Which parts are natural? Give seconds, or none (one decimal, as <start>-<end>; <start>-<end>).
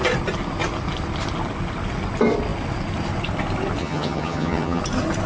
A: 0.0-3.8; 4.8-5.3